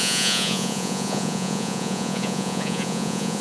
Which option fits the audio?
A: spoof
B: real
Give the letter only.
A